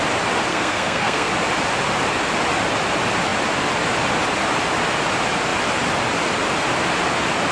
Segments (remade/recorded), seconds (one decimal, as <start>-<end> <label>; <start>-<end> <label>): 0.0-0.5 recorded; 0.5-1.3 remade; 1.3-7.5 recorded